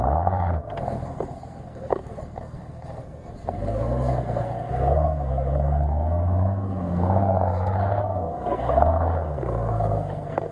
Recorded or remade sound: remade